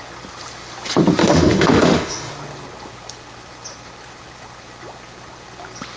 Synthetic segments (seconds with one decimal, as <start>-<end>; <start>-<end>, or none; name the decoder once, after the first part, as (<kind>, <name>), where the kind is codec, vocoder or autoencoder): 1.2-2.3 (autoencoder, DAC-VAE)